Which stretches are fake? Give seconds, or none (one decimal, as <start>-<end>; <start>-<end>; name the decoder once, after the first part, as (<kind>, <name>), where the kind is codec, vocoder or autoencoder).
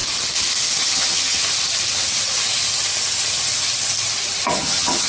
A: 0.8-1.4 (vocoder, HiFi-GAN); 4.5-5.1